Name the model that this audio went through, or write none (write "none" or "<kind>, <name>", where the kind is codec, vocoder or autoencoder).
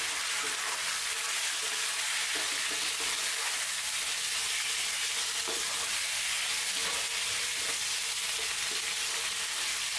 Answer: none